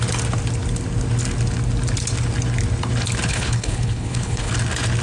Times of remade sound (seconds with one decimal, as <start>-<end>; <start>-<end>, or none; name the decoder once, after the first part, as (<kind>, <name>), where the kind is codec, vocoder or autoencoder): 3.3-4.5 (codec, HILCodec)